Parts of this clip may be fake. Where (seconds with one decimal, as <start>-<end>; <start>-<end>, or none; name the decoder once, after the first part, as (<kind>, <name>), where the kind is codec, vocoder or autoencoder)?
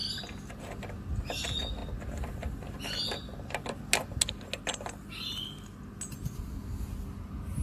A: none